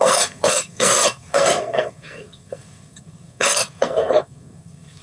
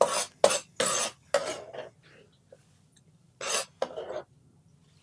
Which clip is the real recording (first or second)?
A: second